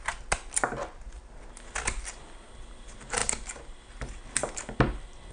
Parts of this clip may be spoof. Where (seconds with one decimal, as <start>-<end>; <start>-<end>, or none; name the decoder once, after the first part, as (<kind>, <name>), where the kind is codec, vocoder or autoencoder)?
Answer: none